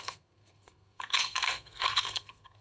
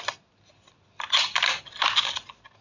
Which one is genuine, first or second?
second